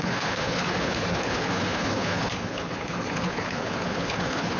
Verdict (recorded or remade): remade